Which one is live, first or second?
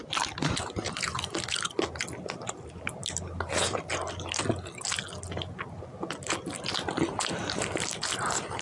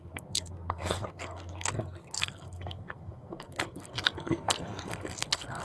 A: first